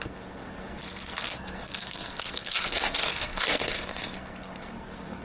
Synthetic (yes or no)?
yes